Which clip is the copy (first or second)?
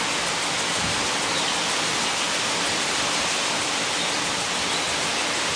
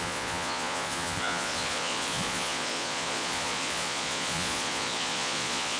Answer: second